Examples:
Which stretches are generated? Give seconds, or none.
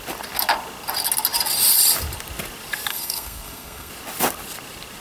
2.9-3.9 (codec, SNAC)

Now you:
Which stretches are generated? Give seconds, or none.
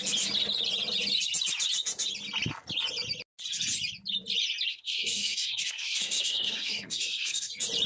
4.7-7.5 (codec, SNAC)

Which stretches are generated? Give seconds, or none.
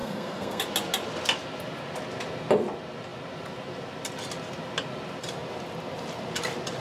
0.0-0.6 (codec, SNAC)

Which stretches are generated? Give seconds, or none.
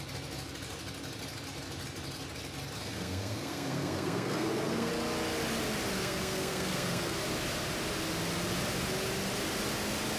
2.8-4.9 (codec, SNAC); 6.0-7.2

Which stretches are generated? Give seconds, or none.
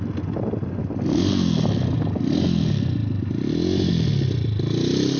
none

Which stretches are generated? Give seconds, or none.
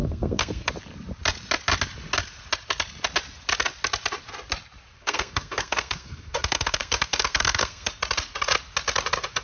0.0-0.7 (codec, SNAC); 5.0-7.9